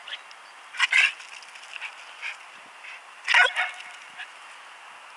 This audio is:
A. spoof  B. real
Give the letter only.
B